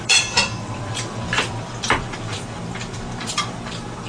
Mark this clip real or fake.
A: fake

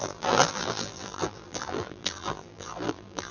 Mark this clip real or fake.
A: fake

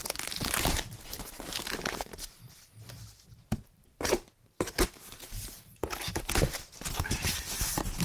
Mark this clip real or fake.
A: fake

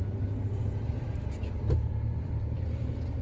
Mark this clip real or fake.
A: fake